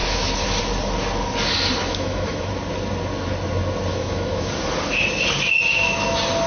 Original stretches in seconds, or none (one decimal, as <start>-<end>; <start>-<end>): 0.0-1.9; 2.5-3.9; 4.5-6.5